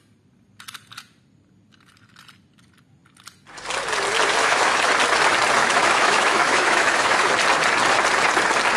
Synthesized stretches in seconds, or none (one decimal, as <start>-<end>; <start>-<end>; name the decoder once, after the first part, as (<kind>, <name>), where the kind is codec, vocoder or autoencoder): 4.4-4.9 (autoencoder, DAC-VAE); 5.6-7.3